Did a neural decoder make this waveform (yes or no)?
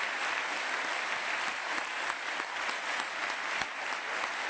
no